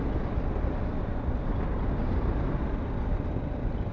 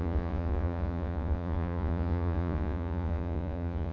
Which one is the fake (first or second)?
second